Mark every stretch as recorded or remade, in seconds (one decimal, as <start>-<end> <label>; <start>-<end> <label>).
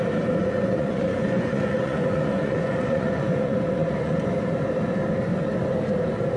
0.0-0.4 recorded; 0.4-4.2 remade; 4.2-6.4 recorded